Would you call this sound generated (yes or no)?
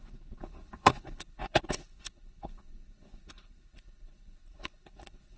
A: yes